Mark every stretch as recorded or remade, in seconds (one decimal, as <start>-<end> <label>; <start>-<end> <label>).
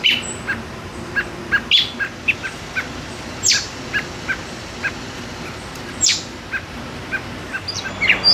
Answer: 0.0-8.3 recorded